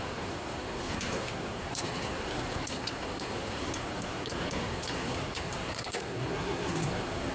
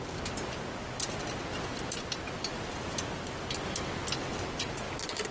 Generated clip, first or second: first